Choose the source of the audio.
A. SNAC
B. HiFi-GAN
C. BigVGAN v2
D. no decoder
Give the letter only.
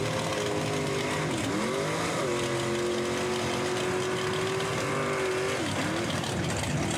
D